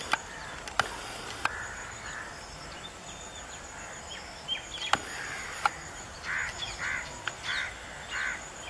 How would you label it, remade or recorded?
recorded